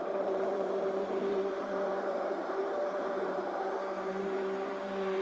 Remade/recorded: remade